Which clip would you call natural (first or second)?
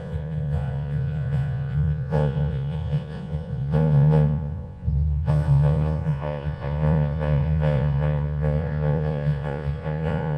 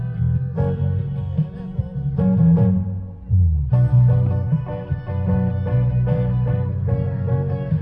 second